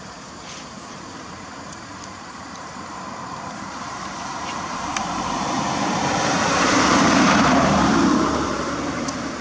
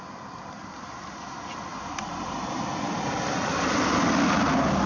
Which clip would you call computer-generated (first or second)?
first